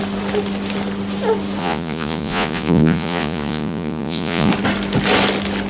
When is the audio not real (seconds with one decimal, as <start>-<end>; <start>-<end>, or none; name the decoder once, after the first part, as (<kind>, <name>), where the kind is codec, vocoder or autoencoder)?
1.6-4.5 (vocoder, Vocos)